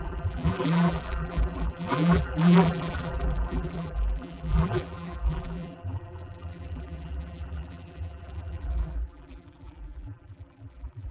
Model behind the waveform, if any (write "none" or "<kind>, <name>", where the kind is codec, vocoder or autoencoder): vocoder, BigVGAN v2